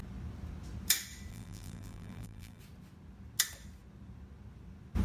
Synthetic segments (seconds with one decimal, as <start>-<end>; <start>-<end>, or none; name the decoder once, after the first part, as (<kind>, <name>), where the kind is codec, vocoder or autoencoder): 1.3-2.6 (vocoder, BigVGAN v2)